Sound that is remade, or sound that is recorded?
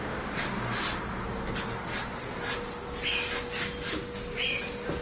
recorded